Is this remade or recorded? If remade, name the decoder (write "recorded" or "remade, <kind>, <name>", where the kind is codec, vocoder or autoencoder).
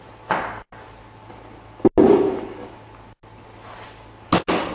recorded